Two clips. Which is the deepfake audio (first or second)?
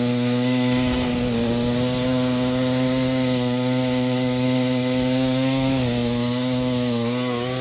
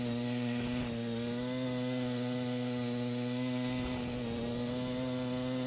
first